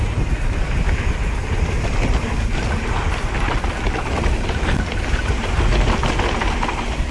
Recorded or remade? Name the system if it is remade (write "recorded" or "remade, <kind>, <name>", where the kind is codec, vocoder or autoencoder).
recorded